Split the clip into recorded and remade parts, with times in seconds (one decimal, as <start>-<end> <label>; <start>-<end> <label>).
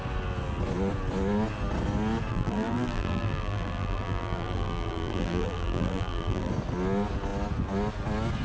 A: 0.0-2.3 recorded; 2.3-6.5 remade; 6.5-8.4 recorded